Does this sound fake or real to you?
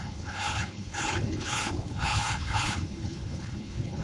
fake